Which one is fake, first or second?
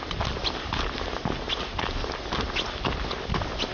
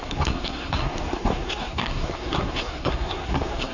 second